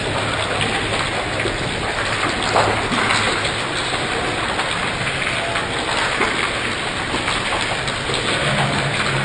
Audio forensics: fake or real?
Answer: real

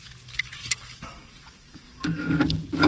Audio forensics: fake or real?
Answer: fake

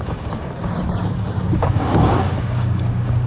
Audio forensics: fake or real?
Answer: fake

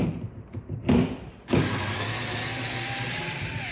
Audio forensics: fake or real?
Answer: real